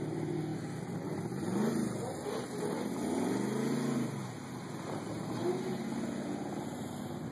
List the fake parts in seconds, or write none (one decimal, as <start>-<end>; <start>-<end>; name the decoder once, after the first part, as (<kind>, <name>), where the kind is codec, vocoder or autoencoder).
none